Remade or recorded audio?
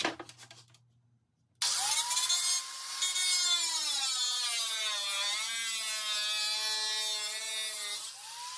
recorded